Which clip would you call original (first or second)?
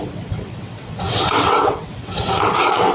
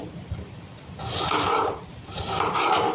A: second